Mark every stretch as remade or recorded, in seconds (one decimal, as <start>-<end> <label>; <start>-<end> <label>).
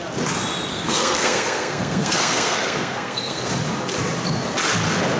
0.0-0.7 recorded; 0.7-3.5 remade; 3.5-5.2 recorded